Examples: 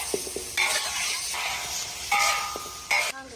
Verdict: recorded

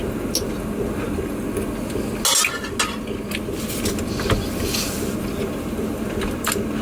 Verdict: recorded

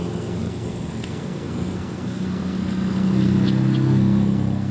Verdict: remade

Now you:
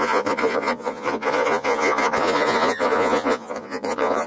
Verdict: remade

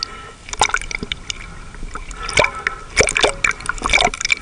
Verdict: recorded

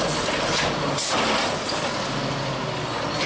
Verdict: recorded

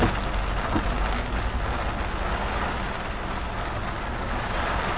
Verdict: recorded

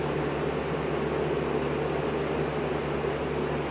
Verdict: recorded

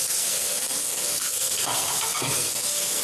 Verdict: remade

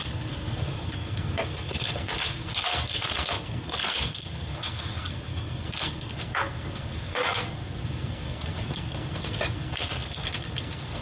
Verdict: remade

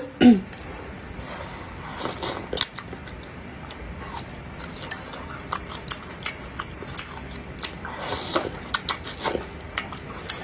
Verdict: recorded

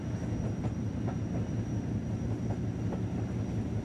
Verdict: recorded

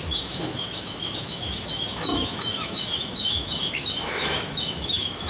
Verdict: remade